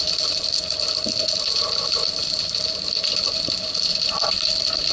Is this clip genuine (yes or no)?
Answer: yes